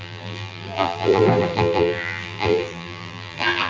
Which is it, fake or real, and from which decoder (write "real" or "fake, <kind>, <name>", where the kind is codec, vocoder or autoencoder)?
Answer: fake, vocoder, BigVGAN v2